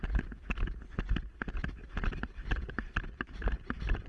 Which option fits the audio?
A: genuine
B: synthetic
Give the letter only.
A